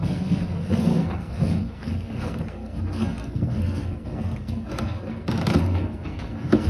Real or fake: fake